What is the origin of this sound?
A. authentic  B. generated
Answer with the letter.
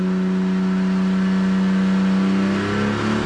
A